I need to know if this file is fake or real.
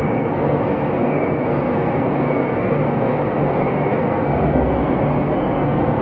fake